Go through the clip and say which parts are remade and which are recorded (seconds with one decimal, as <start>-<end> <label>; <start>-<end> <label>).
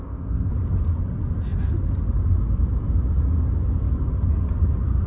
0.0-0.5 remade; 0.5-5.1 recorded